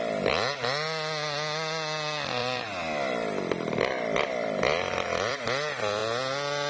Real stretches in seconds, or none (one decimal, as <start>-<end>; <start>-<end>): 0.0-2.4; 5.4-6.7